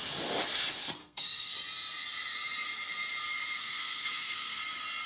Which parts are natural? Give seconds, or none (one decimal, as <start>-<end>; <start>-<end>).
0.0-1.0; 1.5-3.6; 4.6-5.1